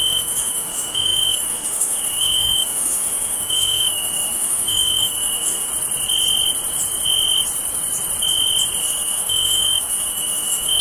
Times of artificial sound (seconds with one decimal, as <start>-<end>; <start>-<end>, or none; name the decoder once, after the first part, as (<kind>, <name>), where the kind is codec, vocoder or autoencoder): 0.0-5.7 (autoencoder, DAC-VAE); 8.8-10.8